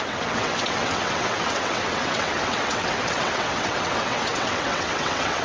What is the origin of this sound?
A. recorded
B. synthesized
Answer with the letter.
B